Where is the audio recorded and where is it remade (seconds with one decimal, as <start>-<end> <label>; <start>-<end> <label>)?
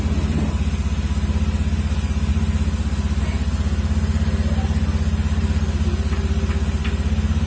0.0-7.5 recorded